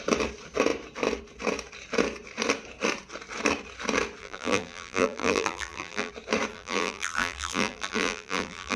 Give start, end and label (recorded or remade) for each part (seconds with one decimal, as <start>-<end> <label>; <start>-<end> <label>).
0.0-4.2 recorded; 4.2-6.1 remade; 6.1-6.5 recorded; 6.5-8.8 remade